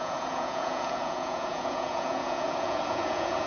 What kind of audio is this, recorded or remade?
remade